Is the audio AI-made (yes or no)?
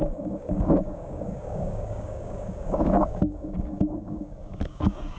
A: yes